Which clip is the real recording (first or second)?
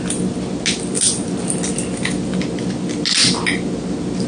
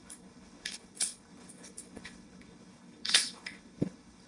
first